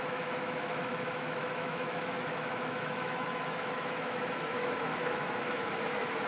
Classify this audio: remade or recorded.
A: remade